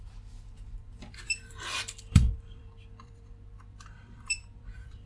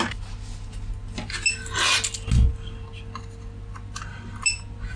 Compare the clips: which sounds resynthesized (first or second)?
first